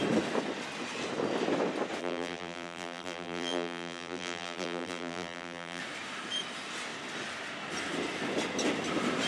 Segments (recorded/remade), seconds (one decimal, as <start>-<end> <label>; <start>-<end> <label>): 0.0-2.0 recorded; 2.0-5.8 remade; 5.8-9.3 recorded